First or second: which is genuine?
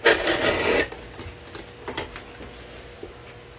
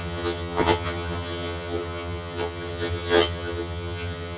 first